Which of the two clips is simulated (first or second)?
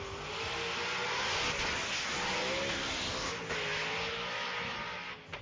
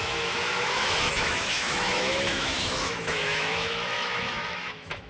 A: second